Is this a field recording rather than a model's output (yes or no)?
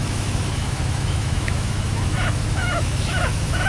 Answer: no